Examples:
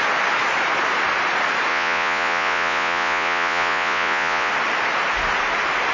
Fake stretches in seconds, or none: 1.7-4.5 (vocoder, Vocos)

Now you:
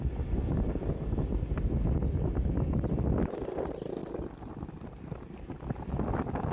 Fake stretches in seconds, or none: none

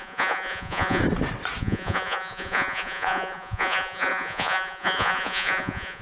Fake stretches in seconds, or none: 0.0-1.0 (vocoder, Vocos); 1.6-6.0

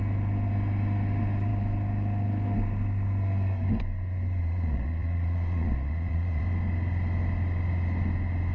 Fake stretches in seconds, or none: 4.4-6.4 (vocoder, Vocos)

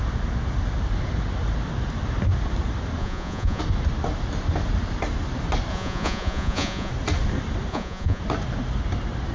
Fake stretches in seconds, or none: 3.0-3.6 (vocoder, Vocos); 5.7-6.9; 7.7-8.2